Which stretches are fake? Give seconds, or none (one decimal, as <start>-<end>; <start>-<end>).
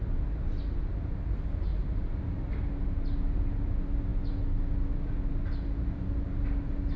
1.7-2.7